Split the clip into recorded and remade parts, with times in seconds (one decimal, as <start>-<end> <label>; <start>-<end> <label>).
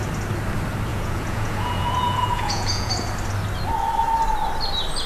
0.0-0.9 recorded; 0.9-2.9 remade; 2.9-5.1 recorded